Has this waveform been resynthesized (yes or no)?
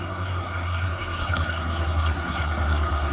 yes